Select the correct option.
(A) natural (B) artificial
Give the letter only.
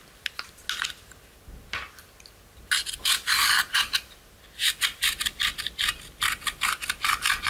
A